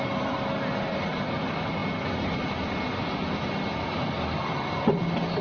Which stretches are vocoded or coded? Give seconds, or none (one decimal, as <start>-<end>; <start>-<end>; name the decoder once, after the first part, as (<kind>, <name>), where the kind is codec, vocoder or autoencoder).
none